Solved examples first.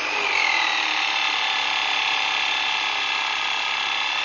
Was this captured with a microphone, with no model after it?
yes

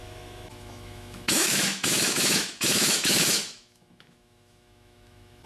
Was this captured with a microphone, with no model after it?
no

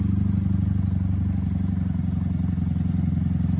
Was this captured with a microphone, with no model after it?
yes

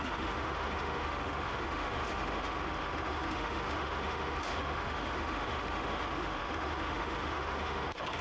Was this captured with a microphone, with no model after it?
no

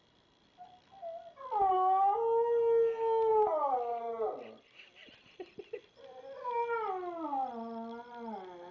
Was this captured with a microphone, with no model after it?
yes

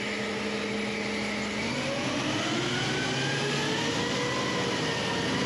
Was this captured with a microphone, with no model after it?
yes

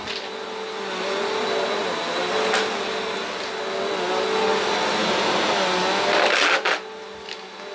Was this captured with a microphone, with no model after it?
yes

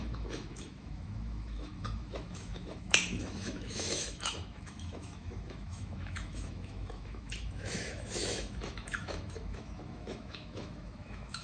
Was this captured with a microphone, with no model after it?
no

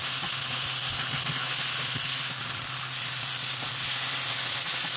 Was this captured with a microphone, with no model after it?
yes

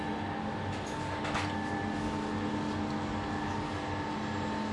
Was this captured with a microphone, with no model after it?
yes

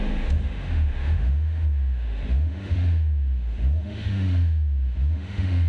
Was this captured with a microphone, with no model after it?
no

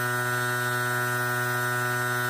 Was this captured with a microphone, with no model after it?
yes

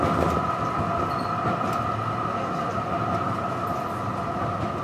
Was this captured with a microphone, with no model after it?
yes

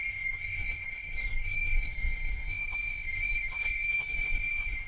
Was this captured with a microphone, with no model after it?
no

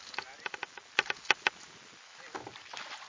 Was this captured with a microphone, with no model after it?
yes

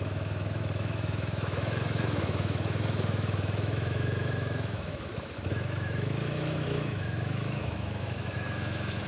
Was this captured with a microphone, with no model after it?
no